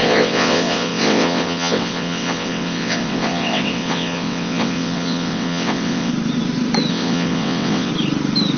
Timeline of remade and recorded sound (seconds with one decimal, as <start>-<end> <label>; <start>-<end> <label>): 0.0-6.1 remade; 6.1-6.9 recorded; 6.9-7.9 remade; 7.9-8.6 recorded